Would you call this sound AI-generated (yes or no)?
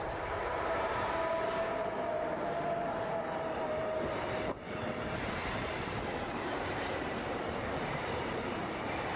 yes